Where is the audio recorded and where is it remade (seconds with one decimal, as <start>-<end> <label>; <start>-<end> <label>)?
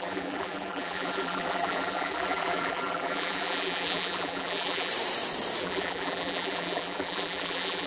0.0-4.9 remade; 4.9-5.6 recorded; 5.6-7.9 remade